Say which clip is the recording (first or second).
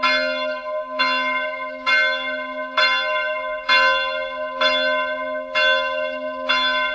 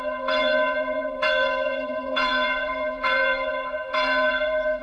first